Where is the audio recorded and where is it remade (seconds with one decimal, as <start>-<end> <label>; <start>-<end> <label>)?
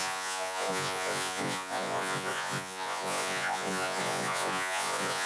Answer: 0.0-5.3 remade